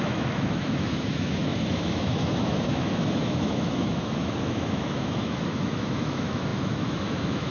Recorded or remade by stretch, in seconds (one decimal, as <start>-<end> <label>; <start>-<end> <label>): 0.0-7.5 remade